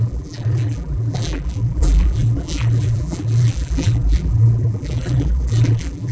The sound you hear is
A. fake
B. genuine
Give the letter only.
A